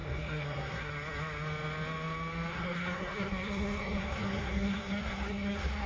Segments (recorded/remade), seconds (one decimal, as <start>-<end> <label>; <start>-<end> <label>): 0.0-0.9 remade; 0.9-2.5 recorded; 2.5-5.9 remade